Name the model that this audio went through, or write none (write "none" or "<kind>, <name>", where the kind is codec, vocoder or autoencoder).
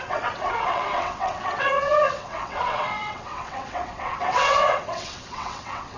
vocoder, WaveNeXt